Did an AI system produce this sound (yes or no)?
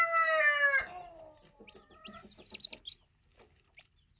no